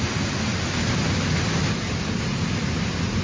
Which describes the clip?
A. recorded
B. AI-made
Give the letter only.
A